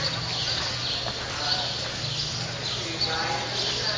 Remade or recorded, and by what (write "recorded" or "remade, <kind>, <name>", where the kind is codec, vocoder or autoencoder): recorded